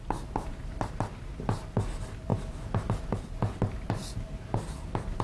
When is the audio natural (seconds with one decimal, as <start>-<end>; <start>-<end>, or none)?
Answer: 0.0-5.2